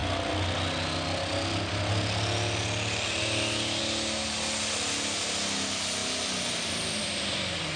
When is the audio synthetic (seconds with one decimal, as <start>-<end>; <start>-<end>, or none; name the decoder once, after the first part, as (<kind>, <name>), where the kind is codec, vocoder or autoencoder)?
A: none